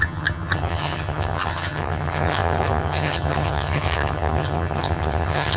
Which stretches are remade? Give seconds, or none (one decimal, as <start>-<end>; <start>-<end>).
0.0-5.6